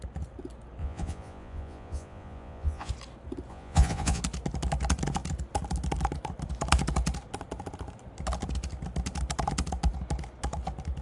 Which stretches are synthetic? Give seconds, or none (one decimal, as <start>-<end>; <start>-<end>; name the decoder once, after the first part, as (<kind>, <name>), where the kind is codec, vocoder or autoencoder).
0.8-2.9 (vocoder, Vocos); 3.5-4.2